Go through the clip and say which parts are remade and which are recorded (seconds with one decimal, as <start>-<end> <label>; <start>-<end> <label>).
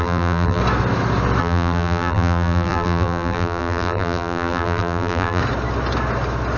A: 0.0-0.6 remade; 0.6-1.4 recorded; 1.4-5.4 remade; 5.4-6.6 recorded